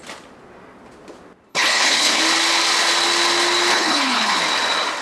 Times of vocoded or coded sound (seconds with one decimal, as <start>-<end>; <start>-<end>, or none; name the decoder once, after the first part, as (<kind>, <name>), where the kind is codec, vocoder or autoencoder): 1.5-2.2 (codec, HILCodec); 3.7-4.4